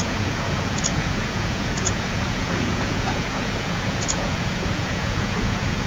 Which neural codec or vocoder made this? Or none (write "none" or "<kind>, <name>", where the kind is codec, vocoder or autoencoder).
vocoder, Vocos